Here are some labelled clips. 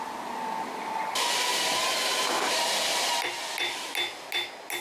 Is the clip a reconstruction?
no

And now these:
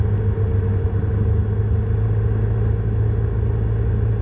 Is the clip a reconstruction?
no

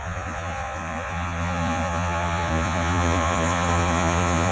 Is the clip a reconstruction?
yes